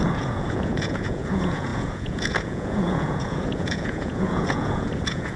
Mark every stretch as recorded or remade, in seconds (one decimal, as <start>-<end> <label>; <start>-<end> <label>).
0.0-5.4 remade